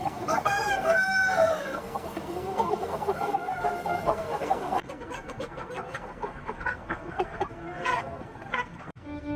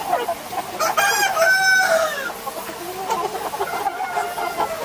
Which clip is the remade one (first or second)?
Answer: first